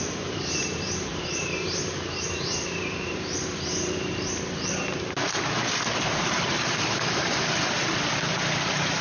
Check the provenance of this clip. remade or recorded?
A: remade